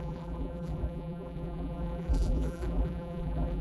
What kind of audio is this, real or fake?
fake